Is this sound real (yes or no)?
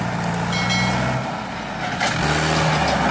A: yes